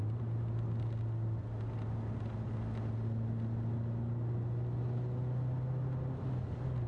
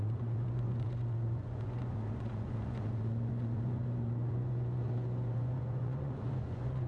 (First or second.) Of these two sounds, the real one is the first